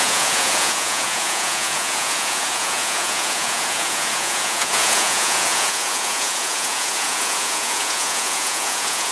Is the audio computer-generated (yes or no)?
yes